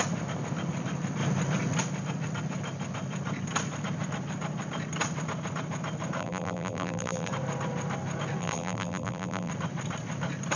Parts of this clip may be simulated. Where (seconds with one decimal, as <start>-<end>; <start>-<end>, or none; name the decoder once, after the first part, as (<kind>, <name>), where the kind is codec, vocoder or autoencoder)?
6.2-7.3 (vocoder, BigVGAN v2); 8.4-9.5